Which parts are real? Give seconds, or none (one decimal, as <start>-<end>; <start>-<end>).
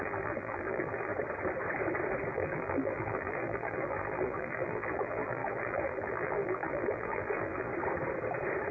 1.1-2.3; 7.7-8.7